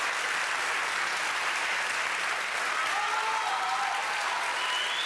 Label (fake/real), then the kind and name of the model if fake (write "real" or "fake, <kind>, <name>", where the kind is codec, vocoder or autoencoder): real